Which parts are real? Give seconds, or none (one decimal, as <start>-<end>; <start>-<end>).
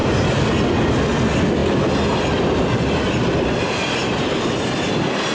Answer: 0.0-5.3